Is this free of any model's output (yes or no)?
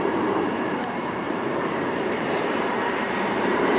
no